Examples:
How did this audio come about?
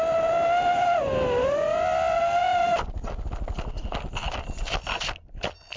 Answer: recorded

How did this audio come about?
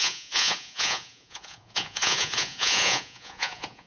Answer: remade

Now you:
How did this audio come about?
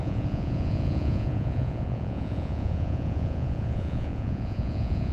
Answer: remade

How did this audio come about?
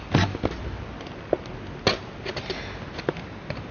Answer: recorded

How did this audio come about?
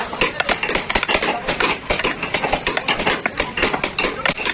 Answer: recorded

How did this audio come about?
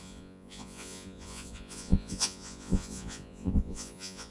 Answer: remade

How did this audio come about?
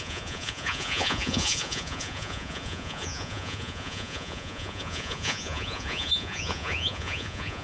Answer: remade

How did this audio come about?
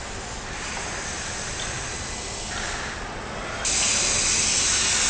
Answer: recorded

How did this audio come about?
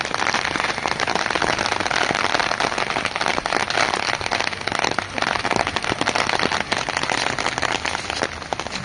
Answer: recorded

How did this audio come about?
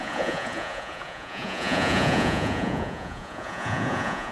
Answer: remade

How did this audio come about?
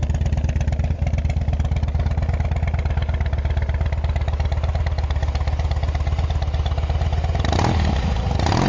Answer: recorded